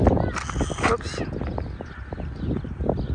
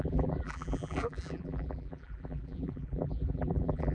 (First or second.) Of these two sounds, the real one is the first